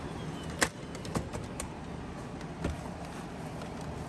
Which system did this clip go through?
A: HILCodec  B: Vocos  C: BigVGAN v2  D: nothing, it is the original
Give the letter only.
D